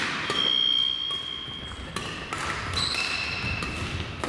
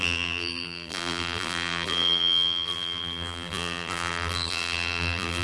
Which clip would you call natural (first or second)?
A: first